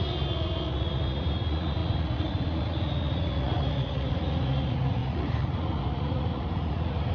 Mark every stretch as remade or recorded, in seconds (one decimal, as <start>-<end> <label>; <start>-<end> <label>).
0.0-7.1 remade